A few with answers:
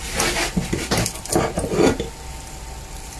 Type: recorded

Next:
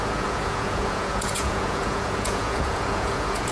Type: remade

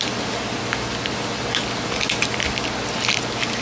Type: recorded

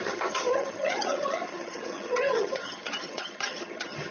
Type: remade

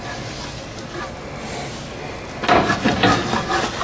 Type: recorded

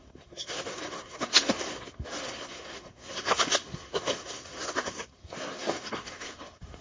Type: remade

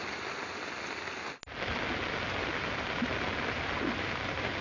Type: recorded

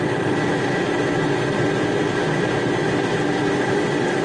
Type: recorded